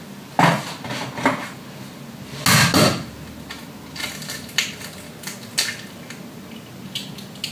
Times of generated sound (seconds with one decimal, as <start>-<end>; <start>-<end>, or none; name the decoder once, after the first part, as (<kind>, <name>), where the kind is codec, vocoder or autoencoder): none